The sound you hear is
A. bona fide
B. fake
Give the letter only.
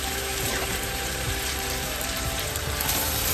B